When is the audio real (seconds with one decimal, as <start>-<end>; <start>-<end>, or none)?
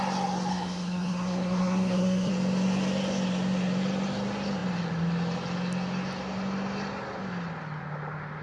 0.0-0.5; 2.3-8.4